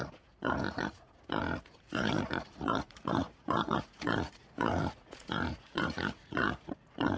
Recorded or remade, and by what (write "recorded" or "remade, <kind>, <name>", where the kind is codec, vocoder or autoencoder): remade, vocoder, Vocos